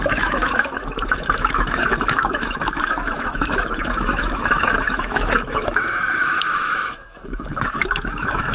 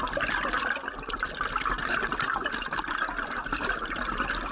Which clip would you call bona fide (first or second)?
second